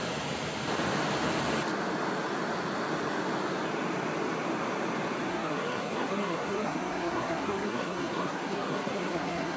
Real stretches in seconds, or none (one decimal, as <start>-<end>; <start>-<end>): 0.0-5.3